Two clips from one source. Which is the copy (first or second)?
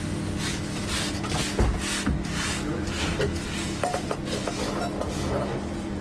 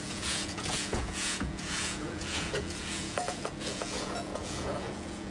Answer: second